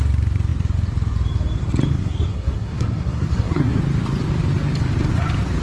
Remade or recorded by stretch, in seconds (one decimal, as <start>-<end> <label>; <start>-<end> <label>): 0.0-2.0 recorded; 2.0-3.8 remade; 3.8-5.6 recorded